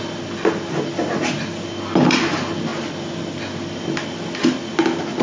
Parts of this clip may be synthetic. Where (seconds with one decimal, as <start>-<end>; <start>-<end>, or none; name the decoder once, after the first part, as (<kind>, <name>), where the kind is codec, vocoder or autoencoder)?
none